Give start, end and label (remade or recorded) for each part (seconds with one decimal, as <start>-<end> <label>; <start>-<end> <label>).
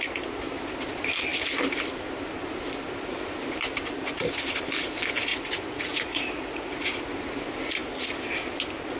0.0-5.3 recorded; 5.3-7.0 remade; 7.0-9.0 recorded